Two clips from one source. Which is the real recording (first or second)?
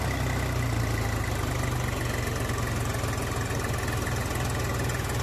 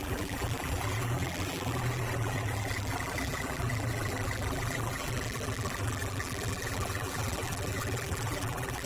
first